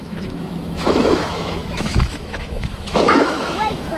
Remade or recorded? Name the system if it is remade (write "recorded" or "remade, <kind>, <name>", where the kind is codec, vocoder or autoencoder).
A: remade, autoencoder, DAC-VAE